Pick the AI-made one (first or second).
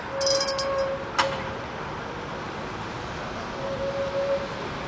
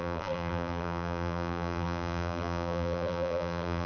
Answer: second